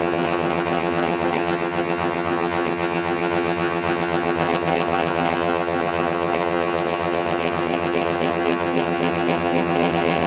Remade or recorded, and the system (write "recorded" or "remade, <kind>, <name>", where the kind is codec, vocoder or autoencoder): remade, vocoder, HiFi-GAN